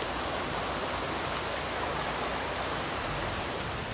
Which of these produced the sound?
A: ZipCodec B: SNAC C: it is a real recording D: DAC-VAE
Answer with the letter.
C